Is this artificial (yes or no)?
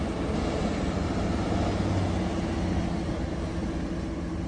no